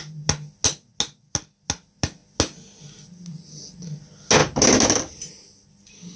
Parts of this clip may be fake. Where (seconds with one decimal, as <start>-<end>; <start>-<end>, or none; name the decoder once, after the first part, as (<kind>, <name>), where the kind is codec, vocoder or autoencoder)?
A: none